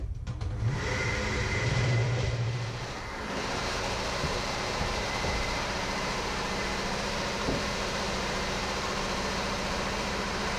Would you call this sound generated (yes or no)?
yes